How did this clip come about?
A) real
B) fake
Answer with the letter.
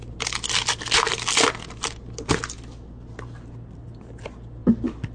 A